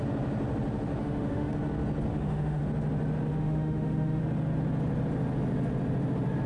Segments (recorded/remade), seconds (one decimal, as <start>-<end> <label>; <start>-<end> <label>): 0.0-1.0 recorded; 1.0-1.5 remade; 1.5-2.1 recorded; 2.1-2.6 remade; 2.6-3.3 recorded; 3.3-4.2 remade; 4.2-6.5 recorded